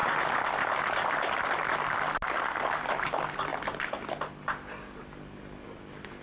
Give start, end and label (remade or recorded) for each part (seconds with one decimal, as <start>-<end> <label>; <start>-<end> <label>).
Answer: 0.0-6.2 recorded